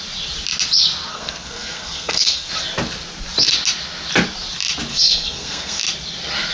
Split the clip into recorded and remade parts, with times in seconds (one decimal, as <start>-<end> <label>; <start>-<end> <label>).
0.0-1.1 recorded; 1.1-2.5 remade; 2.5-4.9 recorded; 4.9-5.8 remade; 5.8-6.5 recorded